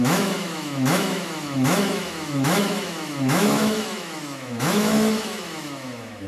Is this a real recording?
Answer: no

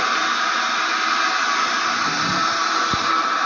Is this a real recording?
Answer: yes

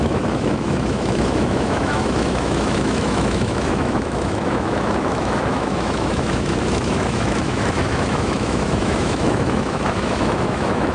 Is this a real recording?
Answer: no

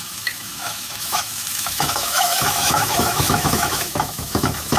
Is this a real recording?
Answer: no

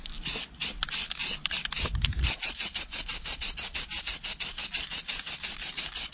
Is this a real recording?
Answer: yes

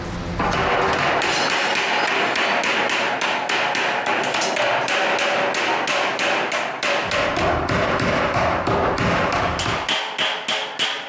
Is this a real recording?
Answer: yes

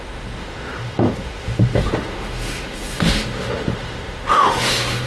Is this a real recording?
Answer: no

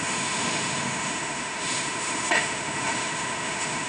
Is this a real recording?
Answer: no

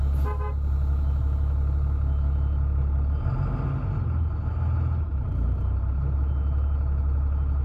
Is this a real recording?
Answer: yes